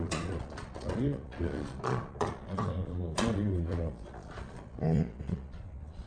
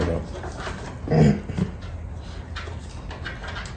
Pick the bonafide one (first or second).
second